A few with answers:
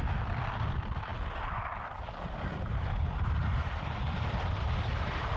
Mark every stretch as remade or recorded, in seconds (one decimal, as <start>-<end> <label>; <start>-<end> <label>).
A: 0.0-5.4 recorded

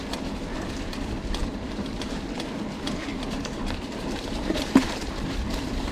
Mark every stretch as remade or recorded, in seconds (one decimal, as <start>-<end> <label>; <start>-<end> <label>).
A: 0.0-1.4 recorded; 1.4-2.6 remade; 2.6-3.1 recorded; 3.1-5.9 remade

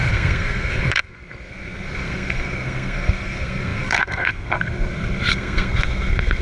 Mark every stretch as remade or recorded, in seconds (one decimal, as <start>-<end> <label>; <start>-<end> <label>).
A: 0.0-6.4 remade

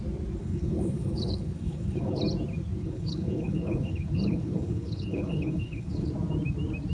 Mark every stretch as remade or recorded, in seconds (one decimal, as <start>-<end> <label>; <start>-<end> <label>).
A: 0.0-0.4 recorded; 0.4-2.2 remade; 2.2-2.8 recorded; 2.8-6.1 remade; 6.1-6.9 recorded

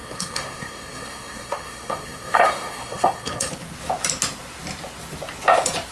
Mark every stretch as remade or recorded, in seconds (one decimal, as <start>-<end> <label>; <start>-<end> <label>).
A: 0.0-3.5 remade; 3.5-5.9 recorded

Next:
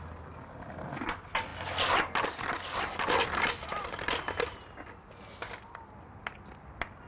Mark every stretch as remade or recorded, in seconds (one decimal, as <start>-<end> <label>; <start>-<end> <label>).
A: 0.0-7.1 recorded

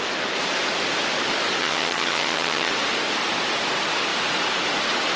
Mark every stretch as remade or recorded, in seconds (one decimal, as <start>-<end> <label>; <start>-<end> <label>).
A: 0.0-1.6 recorded; 1.6-2.7 remade; 2.7-5.2 recorded

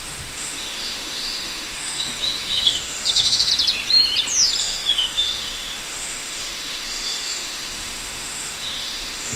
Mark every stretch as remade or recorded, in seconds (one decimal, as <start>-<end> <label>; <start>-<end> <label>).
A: 0.0-3.5 remade; 3.5-4.6 recorded; 4.6-9.4 remade